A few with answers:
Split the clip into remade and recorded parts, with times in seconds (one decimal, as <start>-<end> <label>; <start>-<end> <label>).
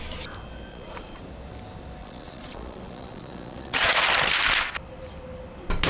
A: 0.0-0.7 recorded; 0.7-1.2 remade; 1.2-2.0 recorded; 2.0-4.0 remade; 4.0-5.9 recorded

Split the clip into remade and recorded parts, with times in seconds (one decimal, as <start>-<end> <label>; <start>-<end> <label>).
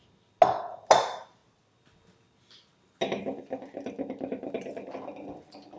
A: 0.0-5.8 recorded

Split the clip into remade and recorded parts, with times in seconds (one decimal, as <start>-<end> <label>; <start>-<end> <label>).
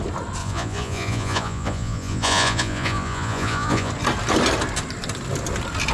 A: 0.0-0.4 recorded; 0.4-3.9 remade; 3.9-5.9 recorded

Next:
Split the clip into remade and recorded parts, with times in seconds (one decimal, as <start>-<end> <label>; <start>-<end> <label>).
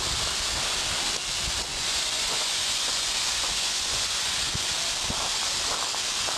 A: 0.0-1.7 recorded; 1.7-4.7 remade; 4.7-6.4 recorded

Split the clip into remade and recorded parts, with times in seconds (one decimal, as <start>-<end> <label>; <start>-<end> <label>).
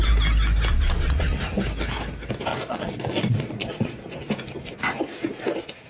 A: 0.0-0.7 recorded; 0.7-1.4 remade; 1.4-2.5 recorded; 2.5-4.0 remade; 4.0-5.9 recorded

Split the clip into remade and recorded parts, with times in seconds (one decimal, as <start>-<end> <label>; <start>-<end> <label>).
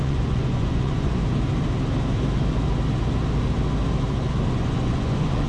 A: 0.0-1.2 remade; 1.2-4.5 recorded; 4.5-5.5 remade